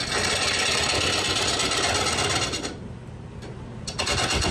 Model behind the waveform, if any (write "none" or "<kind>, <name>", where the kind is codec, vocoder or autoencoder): none